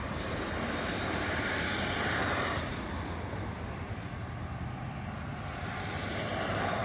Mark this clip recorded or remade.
remade